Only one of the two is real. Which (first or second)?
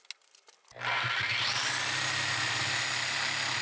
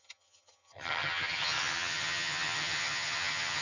first